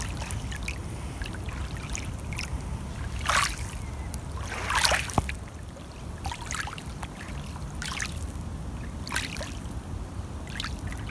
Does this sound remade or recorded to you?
recorded